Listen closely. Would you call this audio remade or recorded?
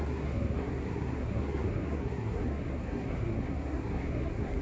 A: remade